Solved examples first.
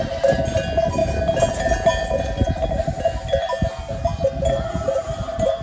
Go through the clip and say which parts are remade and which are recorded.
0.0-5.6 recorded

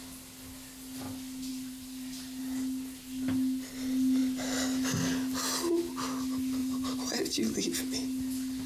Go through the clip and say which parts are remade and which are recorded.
0.0-1.5 recorded; 1.5-2.4 remade; 2.4-6.6 recorded; 6.6-7.1 remade; 7.1-8.7 recorded

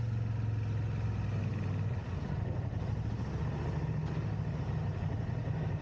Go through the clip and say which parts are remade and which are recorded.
0.0-5.8 recorded

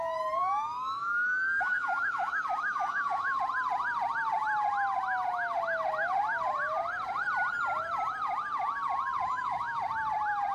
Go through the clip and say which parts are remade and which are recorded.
0.0-0.4 recorded; 0.4-3.4 remade; 3.4-9.3 recorded; 9.3-9.8 remade; 9.8-10.5 recorded

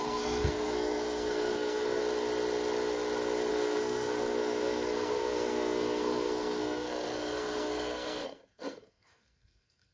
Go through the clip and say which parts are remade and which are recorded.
0.0-2.0 remade; 2.0-3.5 recorded; 3.5-9.9 remade

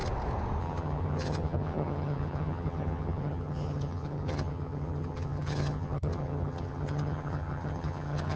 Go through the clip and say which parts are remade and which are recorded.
0.0-0.6 recorded; 0.6-8.4 remade